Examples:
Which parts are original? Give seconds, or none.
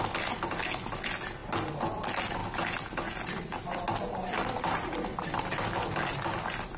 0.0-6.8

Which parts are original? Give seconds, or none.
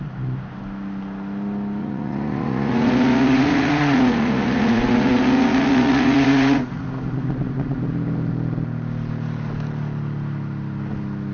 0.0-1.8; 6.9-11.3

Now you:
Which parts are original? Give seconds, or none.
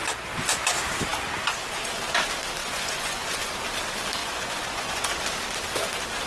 0.0-2.6; 3.5-4.2; 5.2-6.3